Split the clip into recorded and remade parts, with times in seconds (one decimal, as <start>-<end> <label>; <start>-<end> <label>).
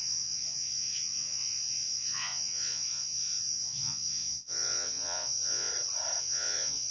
0.0-5.7 remade; 5.7-6.2 recorded; 6.2-6.9 remade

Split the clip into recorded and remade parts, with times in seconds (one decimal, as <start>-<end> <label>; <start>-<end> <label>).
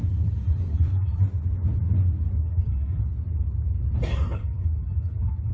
0.0-0.7 recorded; 0.7-1.2 remade; 1.2-2.4 recorded; 2.4-3.0 remade; 3.0-4.4 recorded; 4.4-5.5 remade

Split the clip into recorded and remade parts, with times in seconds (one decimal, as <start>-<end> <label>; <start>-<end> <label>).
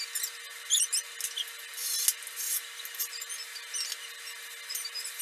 0.0-5.2 recorded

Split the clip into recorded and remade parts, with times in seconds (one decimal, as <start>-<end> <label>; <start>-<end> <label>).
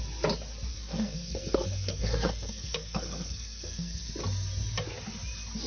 0.0-0.7 recorded; 0.7-4.1 remade; 4.1-5.7 recorded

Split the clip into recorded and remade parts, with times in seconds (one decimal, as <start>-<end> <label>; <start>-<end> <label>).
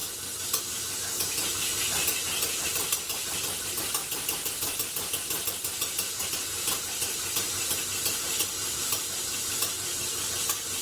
0.0-0.6 recorded; 0.6-1.7 remade; 1.7-2.5 recorded; 2.5-10.8 remade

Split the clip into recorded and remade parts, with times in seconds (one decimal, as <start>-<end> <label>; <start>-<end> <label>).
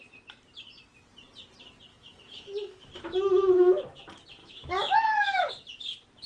0.0-1.9 recorded; 1.9-3.8 remade; 3.8-4.4 recorded; 4.4-5.5 remade; 5.5-6.3 recorded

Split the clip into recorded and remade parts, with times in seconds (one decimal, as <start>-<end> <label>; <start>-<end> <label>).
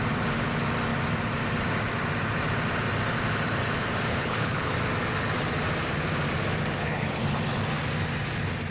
0.0-4.1 recorded; 4.1-4.7 remade; 4.7-6.8 recorded; 6.8-7.6 remade; 7.6-8.7 recorded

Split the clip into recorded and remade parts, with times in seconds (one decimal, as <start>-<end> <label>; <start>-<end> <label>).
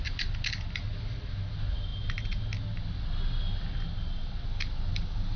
0.0-5.4 recorded